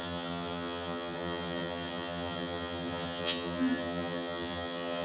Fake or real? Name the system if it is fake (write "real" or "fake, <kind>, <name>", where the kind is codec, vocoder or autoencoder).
fake, vocoder, HiFi-GAN